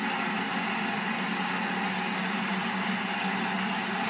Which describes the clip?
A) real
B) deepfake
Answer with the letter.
A